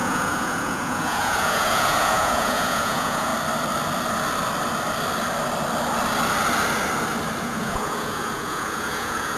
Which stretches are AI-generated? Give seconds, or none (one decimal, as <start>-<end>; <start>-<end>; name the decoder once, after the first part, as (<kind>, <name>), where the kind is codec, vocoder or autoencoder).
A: 0.0-3.3 (vocoder, Vocos); 7.4-9.4